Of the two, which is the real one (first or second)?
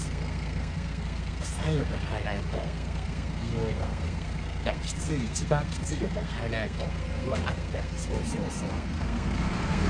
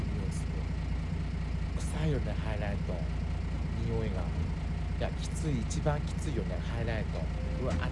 second